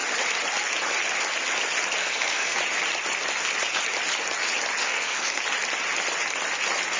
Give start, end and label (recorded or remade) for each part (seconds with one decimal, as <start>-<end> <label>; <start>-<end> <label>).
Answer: 0.0-2.0 recorded; 2.0-2.6 remade; 2.6-4.8 recorded; 4.8-5.4 remade; 5.4-7.0 recorded